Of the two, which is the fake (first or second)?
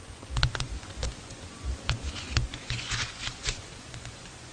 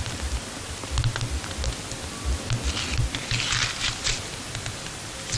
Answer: first